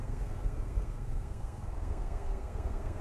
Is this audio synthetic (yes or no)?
yes